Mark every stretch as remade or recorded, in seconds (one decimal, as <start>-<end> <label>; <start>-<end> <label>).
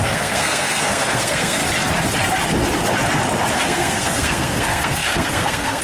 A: 0.0-1.6 remade; 1.6-3.5 recorded; 3.5-5.8 remade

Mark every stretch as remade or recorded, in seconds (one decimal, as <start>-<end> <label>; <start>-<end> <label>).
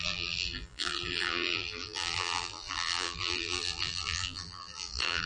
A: 0.0-5.3 remade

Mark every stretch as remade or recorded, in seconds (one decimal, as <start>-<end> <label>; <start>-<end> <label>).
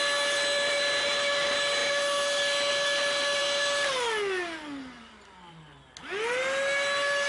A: 0.0-7.3 recorded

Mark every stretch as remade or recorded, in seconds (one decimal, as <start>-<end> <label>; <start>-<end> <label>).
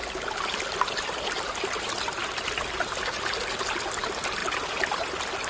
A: 0.0-5.5 recorded